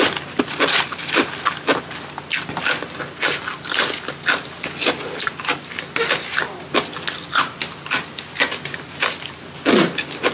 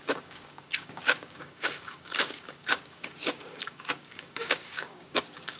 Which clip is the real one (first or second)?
first